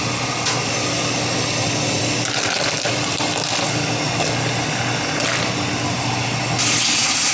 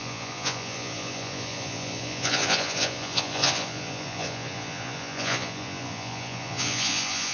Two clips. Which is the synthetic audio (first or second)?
second